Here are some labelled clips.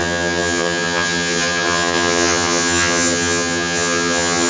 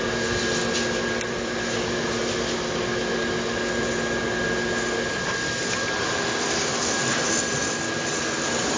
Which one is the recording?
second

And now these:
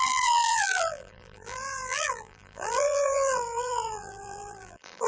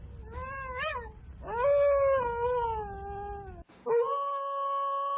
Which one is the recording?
second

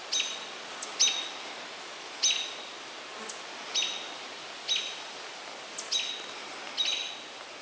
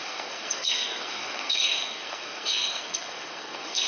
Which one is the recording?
first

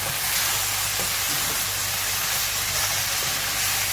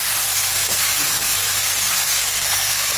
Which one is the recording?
first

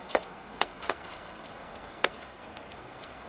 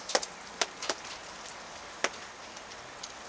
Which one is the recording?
second